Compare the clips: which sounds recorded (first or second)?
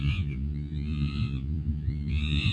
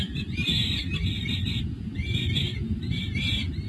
second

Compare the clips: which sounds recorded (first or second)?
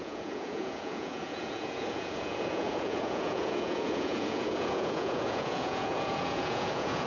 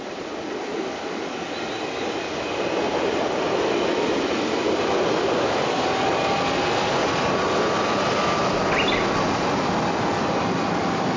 second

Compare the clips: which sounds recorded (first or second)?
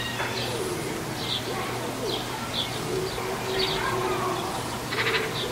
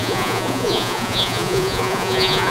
first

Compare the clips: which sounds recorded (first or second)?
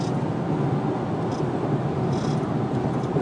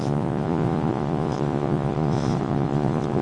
first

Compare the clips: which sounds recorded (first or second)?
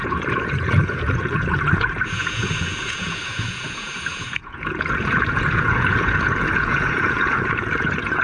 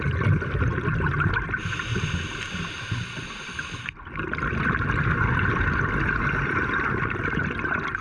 second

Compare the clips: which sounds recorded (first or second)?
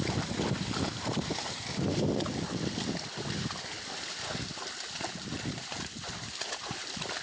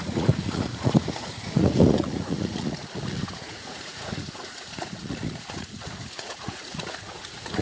first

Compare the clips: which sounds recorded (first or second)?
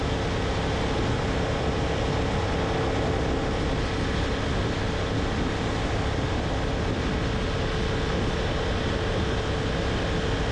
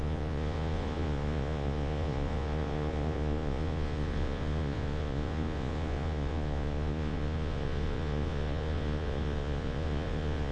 first